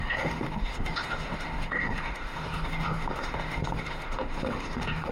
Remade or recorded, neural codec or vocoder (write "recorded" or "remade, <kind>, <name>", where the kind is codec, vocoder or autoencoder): remade, autoencoder, DAC-VAE